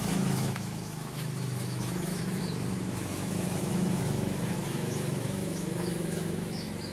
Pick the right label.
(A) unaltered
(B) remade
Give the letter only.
B